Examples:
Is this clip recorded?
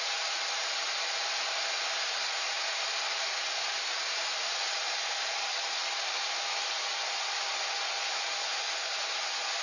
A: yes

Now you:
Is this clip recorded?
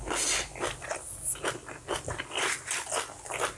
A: yes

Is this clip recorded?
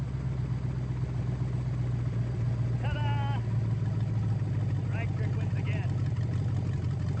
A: yes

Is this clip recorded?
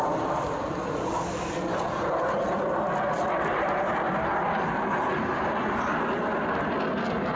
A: yes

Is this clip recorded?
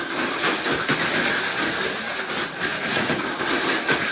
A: yes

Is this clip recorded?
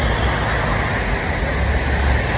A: yes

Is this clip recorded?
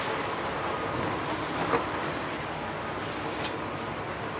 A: yes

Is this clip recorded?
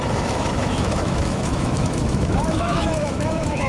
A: no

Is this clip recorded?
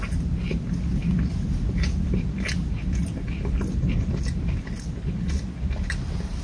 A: yes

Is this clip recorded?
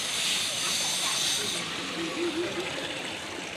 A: yes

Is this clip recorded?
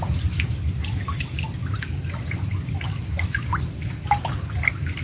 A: yes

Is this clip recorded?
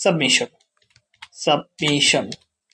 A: yes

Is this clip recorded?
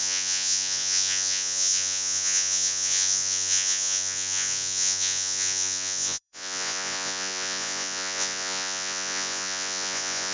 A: no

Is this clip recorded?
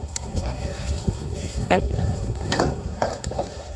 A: no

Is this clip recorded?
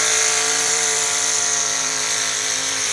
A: no